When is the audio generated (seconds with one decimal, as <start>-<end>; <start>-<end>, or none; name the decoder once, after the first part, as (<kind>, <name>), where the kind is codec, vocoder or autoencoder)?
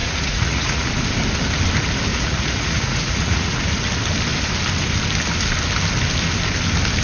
0.0-0.9 (vocoder, Vocos); 2.1-3.6